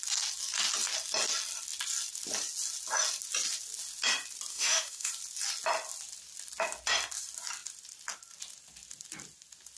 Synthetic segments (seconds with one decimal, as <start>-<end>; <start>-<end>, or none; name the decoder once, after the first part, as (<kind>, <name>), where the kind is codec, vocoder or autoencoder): 4.5-5.1 (autoencoder, DAC-VAE)